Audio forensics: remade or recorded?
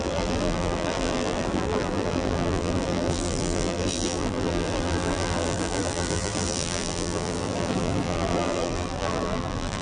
remade